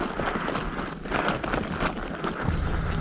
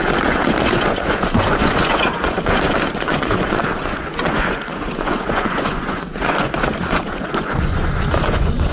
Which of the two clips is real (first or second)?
first